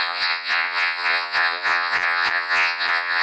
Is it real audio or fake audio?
fake